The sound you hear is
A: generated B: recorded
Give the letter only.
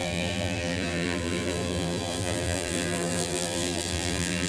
A